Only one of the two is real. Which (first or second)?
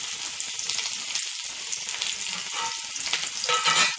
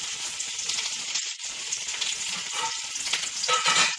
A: first